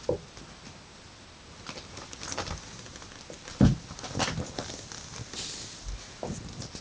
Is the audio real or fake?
real